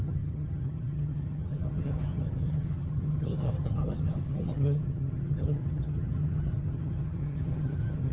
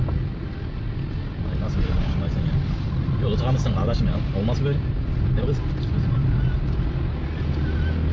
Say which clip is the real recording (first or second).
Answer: second